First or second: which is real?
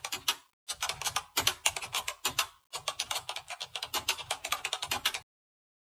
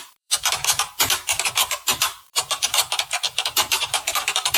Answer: first